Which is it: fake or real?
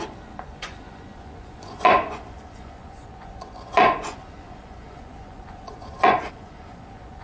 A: fake